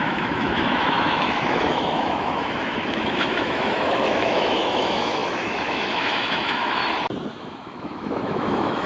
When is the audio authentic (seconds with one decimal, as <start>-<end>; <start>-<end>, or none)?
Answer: 6.8-7.3